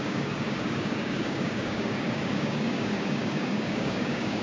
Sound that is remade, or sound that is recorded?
remade